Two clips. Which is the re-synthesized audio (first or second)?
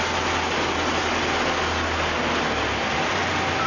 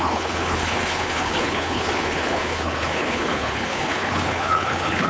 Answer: second